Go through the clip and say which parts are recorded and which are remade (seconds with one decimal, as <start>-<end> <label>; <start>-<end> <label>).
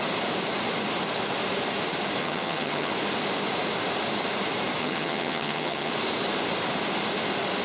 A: 0.0-2.2 recorded; 2.2-2.9 remade; 2.9-4.8 recorded; 4.8-5.9 remade; 5.9-7.6 recorded